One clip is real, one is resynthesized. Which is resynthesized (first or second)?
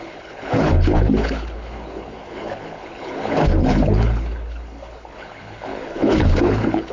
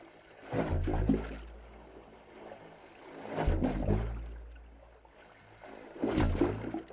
first